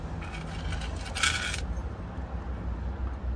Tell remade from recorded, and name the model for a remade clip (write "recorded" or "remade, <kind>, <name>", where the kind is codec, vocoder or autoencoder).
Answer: recorded